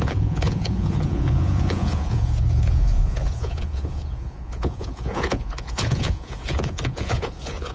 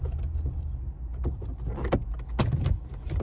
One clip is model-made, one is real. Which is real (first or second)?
second